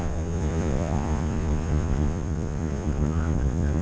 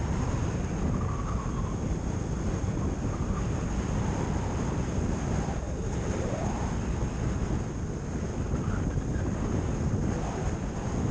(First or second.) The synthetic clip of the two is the first